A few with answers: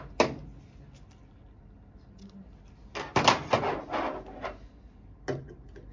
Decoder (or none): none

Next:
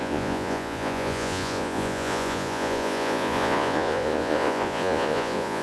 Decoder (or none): vocoder, Vocos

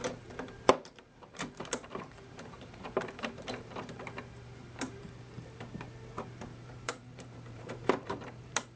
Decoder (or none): vocoder, BigVGAN v2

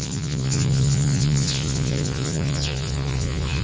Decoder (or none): vocoder, Vocos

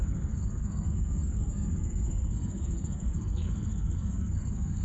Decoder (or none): codec, SNAC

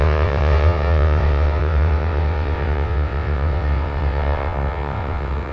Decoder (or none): vocoder, WaveNeXt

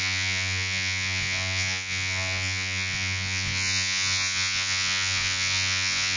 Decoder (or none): vocoder, Vocos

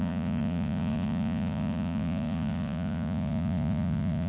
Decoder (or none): vocoder, Vocos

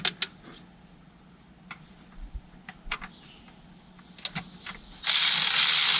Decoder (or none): none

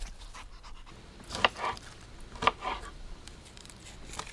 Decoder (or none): none